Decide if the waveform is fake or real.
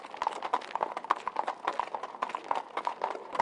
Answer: real